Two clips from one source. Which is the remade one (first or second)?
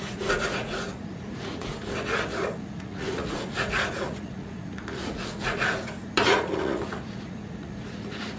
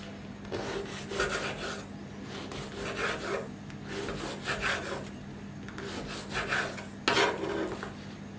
first